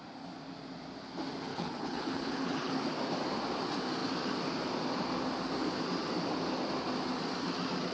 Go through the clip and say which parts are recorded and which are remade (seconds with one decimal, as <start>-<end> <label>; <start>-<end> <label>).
0.0-1.5 recorded; 1.5-2.7 remade; 2.7-7.9 recorded